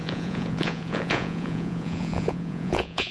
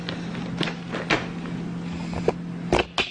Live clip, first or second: second